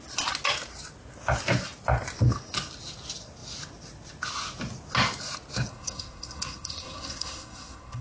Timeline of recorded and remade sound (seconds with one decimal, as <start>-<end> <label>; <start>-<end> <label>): 0.0-5.7 recorded; 5.7-8.0 remade